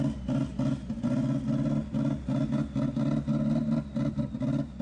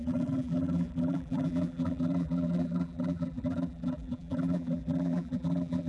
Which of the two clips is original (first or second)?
first